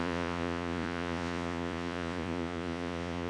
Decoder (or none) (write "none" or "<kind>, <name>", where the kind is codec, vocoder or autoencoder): vocoder, Vocos